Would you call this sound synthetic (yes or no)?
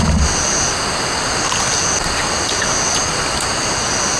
no